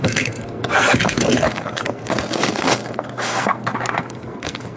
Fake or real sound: fake